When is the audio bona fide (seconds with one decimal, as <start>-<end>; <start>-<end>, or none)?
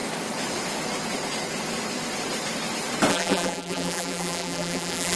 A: 0.0-3.1